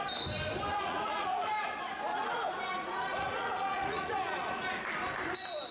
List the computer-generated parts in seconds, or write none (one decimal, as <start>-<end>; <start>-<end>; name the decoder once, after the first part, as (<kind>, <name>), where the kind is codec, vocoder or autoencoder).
0.7-1.5 (vocoder, Vocos); 2.1-4.8